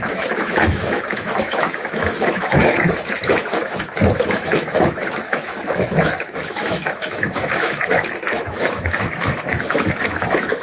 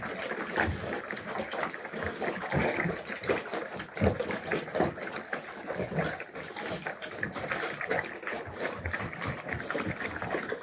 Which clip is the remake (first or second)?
first